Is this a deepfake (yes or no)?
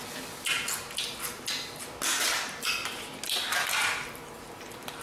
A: no